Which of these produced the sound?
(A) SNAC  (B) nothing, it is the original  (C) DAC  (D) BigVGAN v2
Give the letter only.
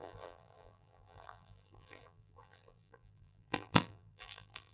D